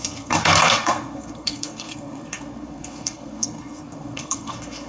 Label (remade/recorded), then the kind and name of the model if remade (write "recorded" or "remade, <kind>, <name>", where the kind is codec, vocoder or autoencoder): remade, codec, SNAC